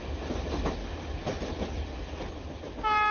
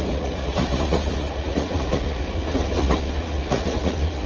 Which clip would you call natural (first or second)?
first